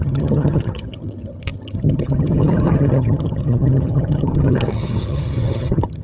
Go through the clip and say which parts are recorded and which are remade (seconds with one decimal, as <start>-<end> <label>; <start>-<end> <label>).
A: 0.0-6.0 remade